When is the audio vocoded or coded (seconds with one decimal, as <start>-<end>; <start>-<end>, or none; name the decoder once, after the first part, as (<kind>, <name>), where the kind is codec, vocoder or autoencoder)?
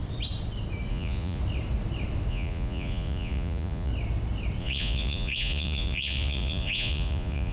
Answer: 0.9-1.4 (vocoder, Vocos); 2.3-3.9; 4.6-7.5